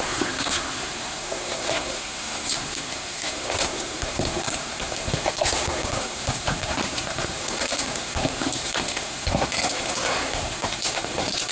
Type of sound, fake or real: fake